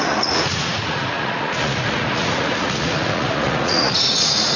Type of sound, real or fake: fake